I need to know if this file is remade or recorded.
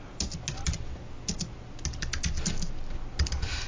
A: recorded